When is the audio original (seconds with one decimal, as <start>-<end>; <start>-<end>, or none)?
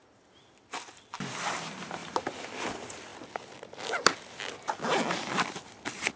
0.0-6.2